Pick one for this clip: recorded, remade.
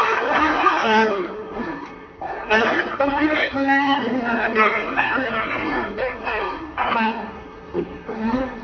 remade